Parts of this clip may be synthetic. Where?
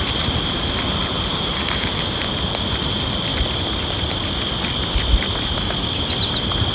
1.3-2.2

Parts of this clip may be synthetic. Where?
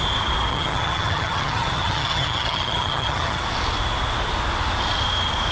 0.5-3.4